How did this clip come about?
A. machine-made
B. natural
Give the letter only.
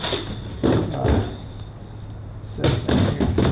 B